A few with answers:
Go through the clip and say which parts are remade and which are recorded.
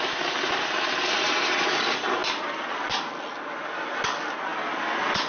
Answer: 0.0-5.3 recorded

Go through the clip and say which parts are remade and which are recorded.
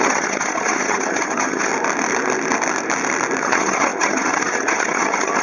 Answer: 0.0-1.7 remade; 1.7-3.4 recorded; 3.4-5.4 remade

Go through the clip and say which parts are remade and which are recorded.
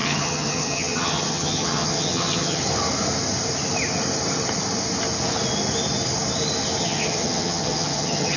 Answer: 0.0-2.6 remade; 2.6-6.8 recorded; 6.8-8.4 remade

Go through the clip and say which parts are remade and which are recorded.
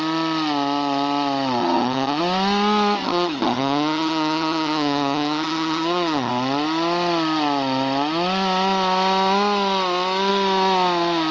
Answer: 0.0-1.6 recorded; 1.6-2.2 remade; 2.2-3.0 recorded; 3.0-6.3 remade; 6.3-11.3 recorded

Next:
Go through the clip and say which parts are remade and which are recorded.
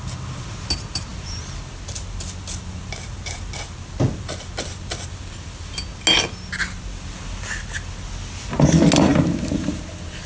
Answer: 0.0-10.3 recorded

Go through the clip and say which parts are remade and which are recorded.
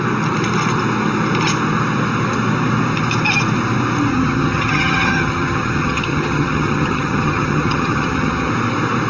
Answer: 0.0-4.1 recorded; 4.1-8.5 remade; 8.5-9.1 recorded